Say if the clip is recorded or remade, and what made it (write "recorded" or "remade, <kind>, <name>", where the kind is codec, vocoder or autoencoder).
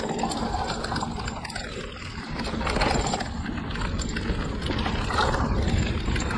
recorded